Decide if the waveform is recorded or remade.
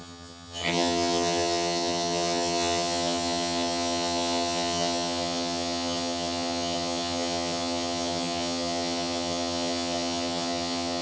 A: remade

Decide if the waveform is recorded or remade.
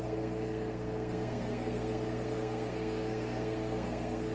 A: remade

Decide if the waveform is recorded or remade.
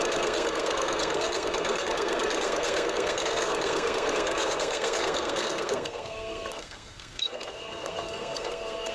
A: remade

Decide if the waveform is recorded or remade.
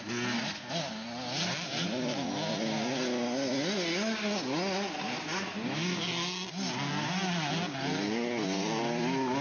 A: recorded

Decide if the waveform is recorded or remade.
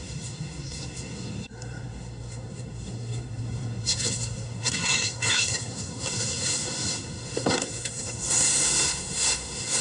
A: remade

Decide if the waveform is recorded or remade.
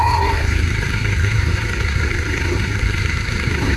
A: remade